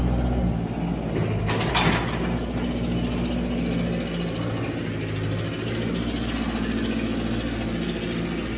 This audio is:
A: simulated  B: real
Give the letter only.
B